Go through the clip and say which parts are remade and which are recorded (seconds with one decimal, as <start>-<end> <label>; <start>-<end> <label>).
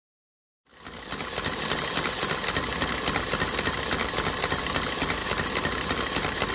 0.0-6.5 recorded